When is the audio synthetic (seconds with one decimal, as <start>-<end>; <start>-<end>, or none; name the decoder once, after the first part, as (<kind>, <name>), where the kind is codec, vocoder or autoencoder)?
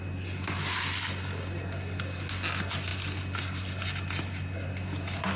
none